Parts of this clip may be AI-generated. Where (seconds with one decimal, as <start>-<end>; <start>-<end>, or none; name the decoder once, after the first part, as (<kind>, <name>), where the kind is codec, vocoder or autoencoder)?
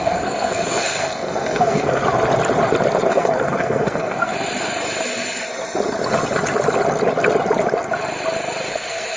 0.0-2.0 (codec, SNAC); 3.1-4.3; 8.7-9.2